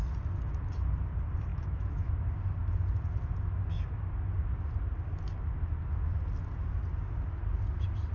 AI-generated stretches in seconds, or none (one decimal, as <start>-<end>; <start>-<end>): 1.5-2.1